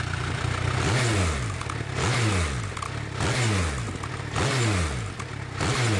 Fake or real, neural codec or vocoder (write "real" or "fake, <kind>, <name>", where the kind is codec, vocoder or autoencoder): real